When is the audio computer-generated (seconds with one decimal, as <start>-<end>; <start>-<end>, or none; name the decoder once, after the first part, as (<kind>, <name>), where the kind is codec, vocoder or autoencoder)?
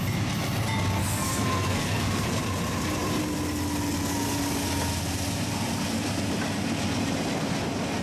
1.0-2.4 (codec, SNAC)